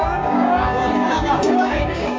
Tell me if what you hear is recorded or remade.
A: remade